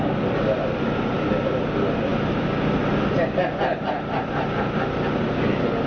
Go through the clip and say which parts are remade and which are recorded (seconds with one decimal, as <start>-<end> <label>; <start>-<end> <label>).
0.0-5.9 recorded